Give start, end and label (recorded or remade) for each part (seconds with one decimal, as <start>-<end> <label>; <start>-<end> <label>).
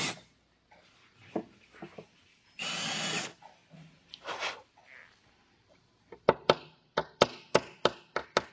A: 0.0-8.5 recorded